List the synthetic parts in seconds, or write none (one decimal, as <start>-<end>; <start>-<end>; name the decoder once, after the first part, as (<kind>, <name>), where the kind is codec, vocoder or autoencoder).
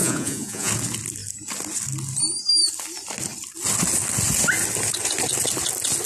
0.0-0.7 (vocoder, Vocos)